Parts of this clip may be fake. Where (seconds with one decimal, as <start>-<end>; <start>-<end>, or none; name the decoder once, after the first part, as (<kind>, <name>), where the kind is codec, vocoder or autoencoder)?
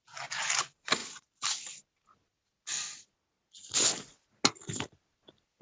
none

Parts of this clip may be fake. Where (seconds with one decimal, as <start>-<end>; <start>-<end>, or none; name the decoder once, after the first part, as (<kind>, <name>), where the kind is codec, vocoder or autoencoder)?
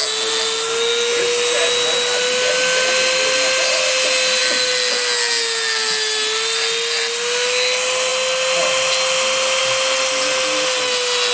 none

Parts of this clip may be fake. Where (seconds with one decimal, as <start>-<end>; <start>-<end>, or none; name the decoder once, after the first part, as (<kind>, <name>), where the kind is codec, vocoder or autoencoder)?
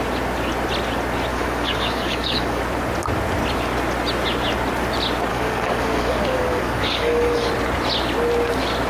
1.3-2.6 (codec, DAC); 5.3-7.5